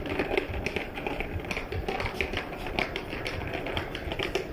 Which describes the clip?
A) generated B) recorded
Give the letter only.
B